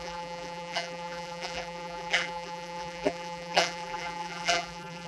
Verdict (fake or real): fake